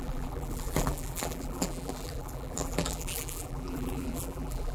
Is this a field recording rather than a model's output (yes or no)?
no